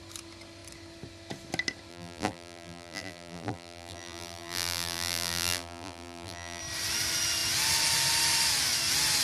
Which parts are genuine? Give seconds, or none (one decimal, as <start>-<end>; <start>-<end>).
0.0-1.9; 6.6-9.2